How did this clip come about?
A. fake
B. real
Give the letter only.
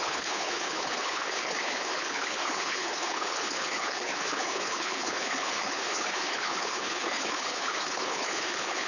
A